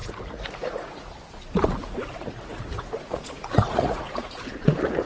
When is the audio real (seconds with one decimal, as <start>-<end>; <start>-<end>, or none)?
1.1-1.8